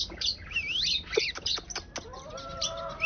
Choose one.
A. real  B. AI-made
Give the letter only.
A